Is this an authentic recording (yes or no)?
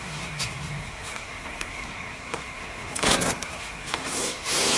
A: no